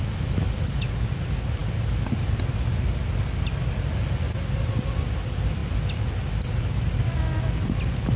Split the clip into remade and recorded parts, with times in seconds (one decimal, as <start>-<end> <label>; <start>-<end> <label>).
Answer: 0.0-8.2 recorded